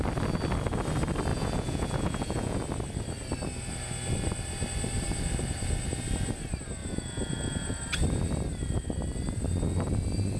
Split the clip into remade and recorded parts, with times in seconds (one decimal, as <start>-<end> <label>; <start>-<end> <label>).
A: 0.0-1.3 recorded; 1.3-2.6 remade; 2.6-6.8 recorded; 6.8-7.8 remade; 7.8-10.4 recorded

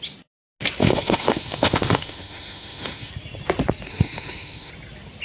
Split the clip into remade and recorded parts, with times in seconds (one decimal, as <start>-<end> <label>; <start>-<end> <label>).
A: 0.0-0.8 recorded; 0.8-3.1 remade; 3.1-3.9 recorded; 3.9-4.7 remade; 4.7-5.2 recorded

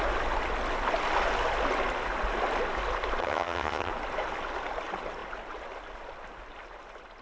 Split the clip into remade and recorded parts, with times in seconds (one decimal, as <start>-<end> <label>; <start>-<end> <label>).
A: 0.0-3.2 recorded; 3.2-3.9 remade; 3.9-7.2 recorded

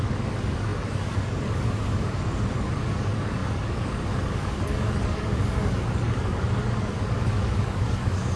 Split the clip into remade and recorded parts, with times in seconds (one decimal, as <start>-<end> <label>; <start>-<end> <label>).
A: 0.0-8.4 remade

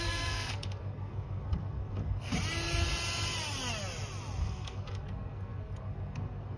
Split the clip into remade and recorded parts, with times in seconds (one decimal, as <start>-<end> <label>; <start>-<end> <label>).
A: 0.0-2.3 remade; 2.3-4.4 recorded; 4.4-6.6 remade

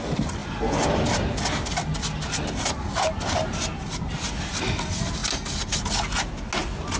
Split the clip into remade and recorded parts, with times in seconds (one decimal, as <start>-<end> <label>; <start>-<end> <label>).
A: 0.0-7.0 recorded

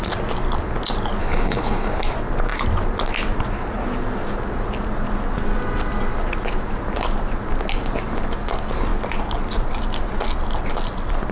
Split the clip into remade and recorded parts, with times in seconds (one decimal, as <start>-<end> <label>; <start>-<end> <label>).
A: 0.0-1.2 recorded; 1.2-2.0 remade; 2.0-11.3 recorded